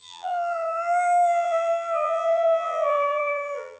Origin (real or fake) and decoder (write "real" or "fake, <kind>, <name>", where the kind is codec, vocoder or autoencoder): fake, vocoder, BigVGAN v2